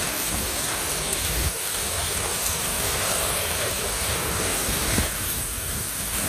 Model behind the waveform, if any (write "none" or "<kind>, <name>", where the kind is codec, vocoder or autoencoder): codec, DAC